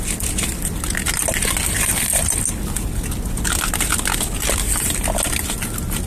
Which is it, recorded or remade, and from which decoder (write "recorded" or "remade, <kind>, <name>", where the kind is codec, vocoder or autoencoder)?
recorded